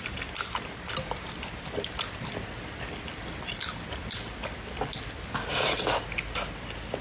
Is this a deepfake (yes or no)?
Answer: no